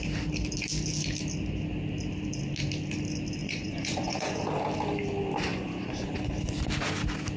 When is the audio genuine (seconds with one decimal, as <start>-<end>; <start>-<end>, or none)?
0.0-3.4; 4.4-5.5; 6.3-7.4